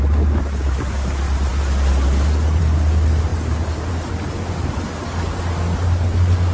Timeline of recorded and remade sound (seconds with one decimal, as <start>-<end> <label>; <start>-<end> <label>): 0.0-3.3 recorded; 3.3-3.9 remade; 3.9-6.5 recorded